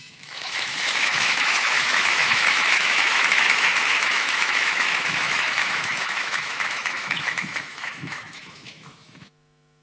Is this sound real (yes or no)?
no